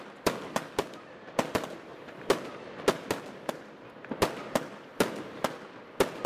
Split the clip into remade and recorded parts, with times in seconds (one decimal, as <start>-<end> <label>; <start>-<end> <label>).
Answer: 0.0-6.3 recorded